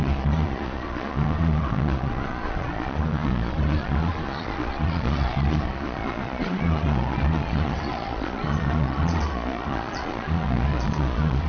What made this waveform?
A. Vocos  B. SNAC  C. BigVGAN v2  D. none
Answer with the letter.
A